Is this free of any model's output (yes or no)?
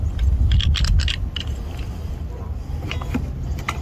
yes